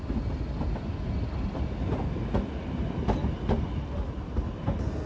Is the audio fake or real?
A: real